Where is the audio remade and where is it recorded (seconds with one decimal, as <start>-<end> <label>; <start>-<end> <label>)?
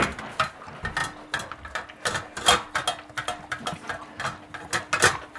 0.0-5.4 recorded